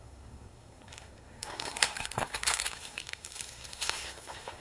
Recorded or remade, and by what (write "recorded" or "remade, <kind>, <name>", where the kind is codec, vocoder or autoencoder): remade, codec, SNAC